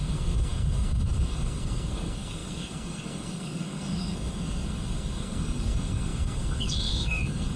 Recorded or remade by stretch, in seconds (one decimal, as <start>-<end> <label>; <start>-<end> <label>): 0.0-7.6 remade

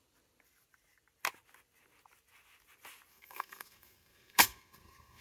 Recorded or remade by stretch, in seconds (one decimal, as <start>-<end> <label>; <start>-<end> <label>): 0.0-3.1 recorded; 3.1-5.2 remade